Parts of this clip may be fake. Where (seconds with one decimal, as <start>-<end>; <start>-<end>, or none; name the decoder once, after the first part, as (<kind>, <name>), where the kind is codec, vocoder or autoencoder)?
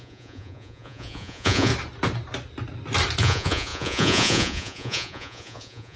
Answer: 0.0-1.7 (vocoder, Vocos); 3.2-6.0